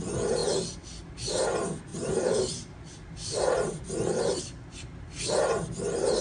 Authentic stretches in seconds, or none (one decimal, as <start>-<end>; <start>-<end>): 0.0-1.9; 4.4-6.2